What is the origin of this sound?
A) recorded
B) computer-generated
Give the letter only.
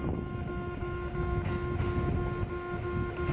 A